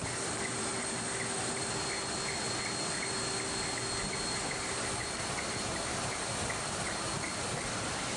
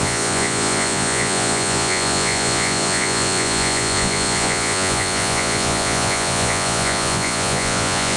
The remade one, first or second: second